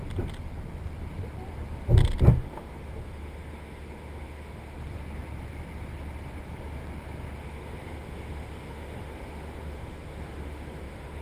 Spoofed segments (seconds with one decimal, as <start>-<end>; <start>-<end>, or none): 2.3-4.8; 7.4-11.2